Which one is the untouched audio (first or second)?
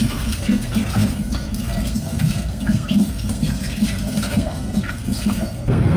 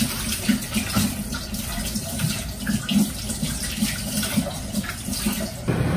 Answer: second